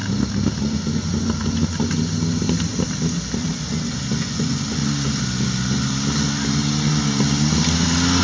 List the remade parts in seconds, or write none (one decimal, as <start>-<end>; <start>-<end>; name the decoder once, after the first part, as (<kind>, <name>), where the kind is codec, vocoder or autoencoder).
4.2-4.8 (vocoder, Vocos)